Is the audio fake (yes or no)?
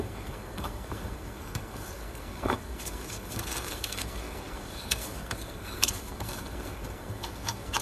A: yes